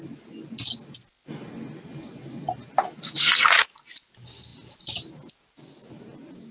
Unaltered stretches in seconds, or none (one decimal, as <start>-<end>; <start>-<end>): 0.0-6.5